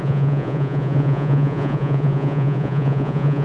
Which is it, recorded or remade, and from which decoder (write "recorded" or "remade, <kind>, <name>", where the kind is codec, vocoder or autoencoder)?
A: remade, vocoder, Vocos